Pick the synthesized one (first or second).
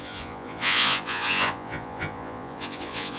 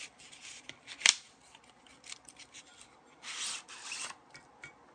first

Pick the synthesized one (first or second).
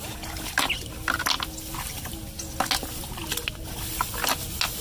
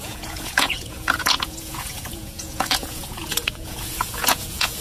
second